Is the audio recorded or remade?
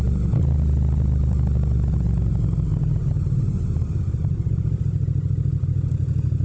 recorded